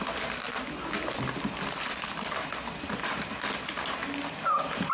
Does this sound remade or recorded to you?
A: recorded